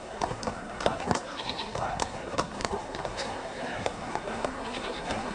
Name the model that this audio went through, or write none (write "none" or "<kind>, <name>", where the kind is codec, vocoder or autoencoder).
codec, SNAC